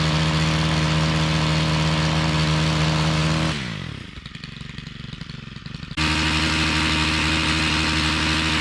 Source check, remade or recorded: recorded